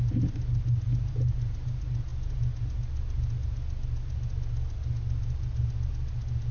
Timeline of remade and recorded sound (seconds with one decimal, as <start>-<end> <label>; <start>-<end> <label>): 0.0-6.5 recorded